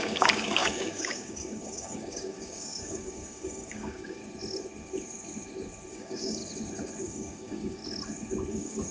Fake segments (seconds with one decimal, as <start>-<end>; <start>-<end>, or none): 0.0-4.2; 5.9-6.4; 7.0-7.8; 8.5-8.9